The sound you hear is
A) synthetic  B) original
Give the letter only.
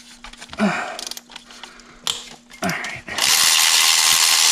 B